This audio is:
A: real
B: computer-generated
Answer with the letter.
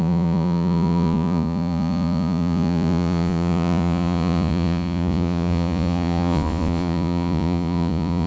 B